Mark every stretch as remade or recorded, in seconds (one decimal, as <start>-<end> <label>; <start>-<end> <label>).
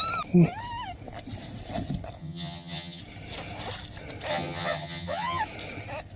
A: 0.0-2.2 recorded; 2.2-3.0 remade; 3.0-4.3 recorded; 4.3-5.4 remade; 5.4-6.2 recorded